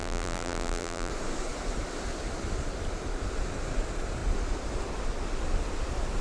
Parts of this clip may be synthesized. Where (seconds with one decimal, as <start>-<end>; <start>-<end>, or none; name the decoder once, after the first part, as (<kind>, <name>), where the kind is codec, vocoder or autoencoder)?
0.0-1.1 (vocoder, BigVGAN v2)